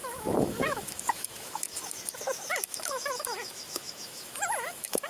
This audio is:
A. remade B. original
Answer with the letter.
A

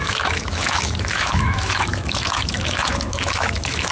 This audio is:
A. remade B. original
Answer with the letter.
A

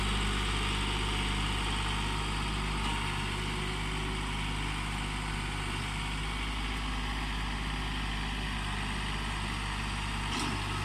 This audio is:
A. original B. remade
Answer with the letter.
A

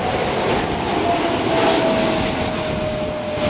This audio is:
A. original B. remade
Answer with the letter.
A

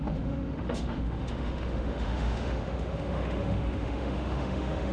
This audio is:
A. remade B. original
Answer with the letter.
A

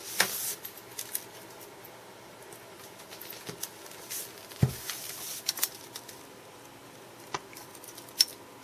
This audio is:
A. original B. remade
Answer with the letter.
A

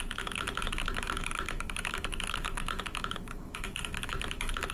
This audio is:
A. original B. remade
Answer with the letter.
B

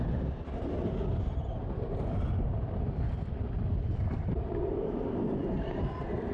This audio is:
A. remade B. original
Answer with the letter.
B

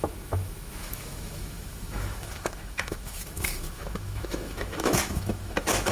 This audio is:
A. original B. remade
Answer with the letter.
B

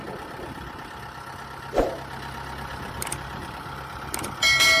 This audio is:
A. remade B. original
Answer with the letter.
B